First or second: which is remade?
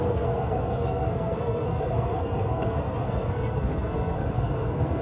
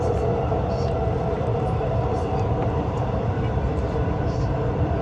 first